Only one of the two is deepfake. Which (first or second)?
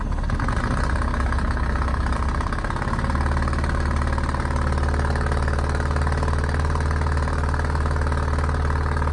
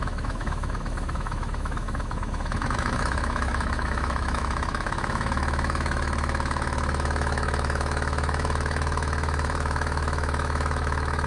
second